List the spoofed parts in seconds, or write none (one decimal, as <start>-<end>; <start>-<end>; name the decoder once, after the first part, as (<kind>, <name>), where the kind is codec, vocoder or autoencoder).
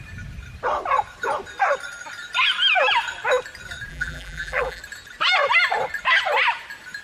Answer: 3.9-4.8 (vocoder, BigVGAN v2)